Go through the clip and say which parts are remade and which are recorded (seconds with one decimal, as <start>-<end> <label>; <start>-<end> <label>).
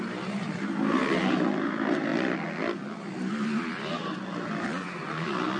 0.0-1.0 remade; 1.0-1.6 recorded; 1.6-2.1 remade; 2.1-5.6 recorded